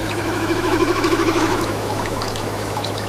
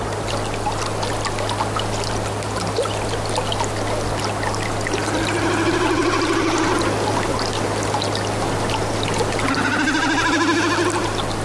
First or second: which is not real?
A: first